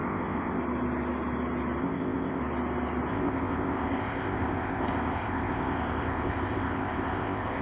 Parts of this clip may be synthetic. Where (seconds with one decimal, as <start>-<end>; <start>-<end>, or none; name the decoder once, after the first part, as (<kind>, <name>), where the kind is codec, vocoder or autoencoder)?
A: 0.0-0.6 (codec, ZipCodec); 1.8-2.4; 3.1-7.6